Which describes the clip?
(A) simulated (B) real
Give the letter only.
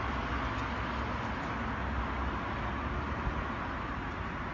B